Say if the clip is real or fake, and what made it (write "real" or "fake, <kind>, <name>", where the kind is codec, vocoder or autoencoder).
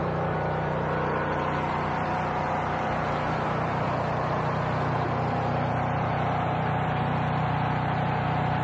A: fake, vocoder, BigVGAN v2